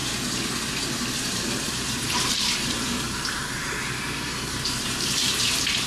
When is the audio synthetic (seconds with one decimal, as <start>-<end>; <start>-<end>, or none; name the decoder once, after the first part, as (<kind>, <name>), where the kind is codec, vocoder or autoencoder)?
0.9-5.9 (vocoder, BigVGAN v2)